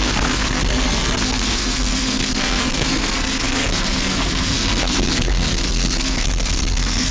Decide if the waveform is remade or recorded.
remade